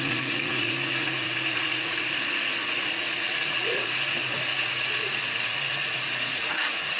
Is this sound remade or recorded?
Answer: remade